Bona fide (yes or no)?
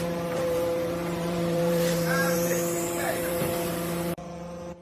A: no